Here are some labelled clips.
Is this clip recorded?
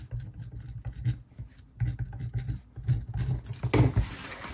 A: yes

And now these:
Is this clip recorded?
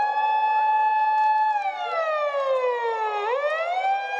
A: yes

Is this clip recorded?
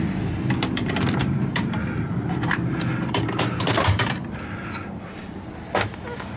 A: no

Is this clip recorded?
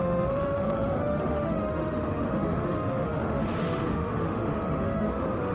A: no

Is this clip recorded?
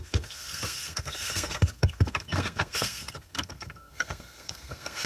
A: no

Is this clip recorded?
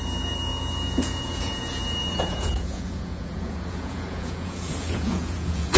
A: no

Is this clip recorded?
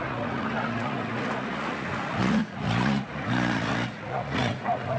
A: no